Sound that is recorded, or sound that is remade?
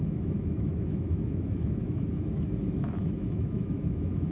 remade